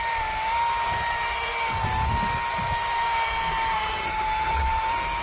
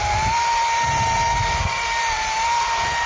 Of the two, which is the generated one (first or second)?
second